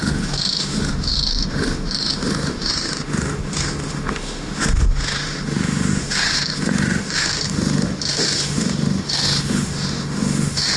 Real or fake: fake